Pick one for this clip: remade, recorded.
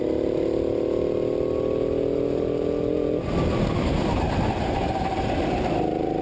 recorded